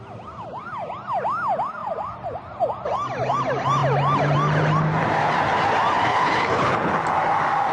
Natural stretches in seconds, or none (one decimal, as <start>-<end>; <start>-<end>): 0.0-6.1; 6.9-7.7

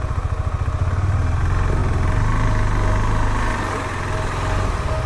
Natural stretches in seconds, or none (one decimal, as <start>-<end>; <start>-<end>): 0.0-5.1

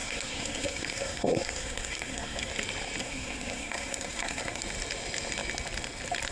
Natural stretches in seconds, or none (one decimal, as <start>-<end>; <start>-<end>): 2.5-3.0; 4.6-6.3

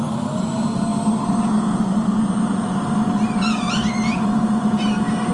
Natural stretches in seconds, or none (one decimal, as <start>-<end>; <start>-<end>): 0.0-5.3

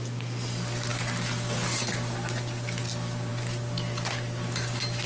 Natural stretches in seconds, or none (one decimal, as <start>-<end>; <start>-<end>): 0.0-5.1

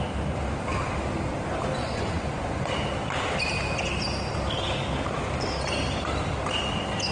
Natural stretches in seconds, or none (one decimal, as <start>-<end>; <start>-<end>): 0.0-1.8; 2.7-7.1